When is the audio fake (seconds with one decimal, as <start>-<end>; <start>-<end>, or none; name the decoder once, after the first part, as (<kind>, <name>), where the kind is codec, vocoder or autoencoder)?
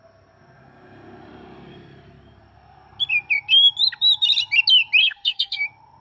5.0-5.6 (codec, SNAC)